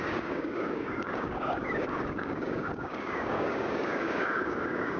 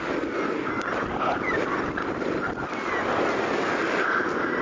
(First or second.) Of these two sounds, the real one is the second